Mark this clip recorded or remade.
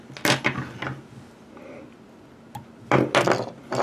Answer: recorded